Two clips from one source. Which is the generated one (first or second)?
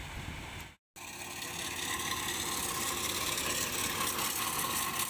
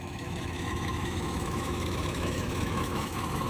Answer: second